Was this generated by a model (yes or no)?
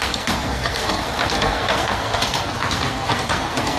yes